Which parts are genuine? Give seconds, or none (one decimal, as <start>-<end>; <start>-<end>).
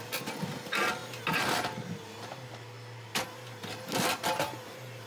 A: 0.0-5.1